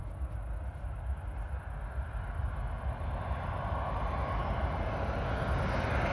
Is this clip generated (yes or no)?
no